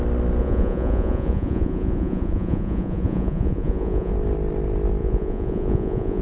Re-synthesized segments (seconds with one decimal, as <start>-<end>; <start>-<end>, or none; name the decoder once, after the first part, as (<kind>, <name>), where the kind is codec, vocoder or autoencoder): 0.4-4.1 (vocoder, Vocos); 5.0-6.2